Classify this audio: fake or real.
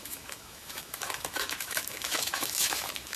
fake